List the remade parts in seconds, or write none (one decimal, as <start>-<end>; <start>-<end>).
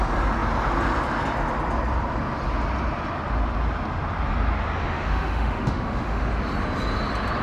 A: 4.8-6.2